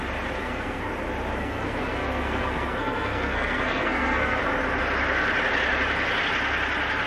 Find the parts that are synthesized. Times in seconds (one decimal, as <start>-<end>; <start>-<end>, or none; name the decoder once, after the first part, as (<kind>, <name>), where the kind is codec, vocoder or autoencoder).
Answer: 0.4-0.9 (codec, SNAC); 1.4-4.4